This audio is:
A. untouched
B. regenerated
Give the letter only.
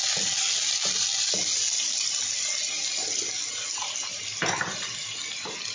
A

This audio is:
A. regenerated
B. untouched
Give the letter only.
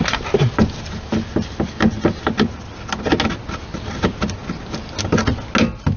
B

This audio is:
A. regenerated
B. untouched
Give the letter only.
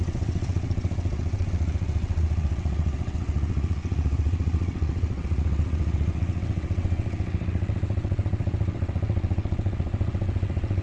A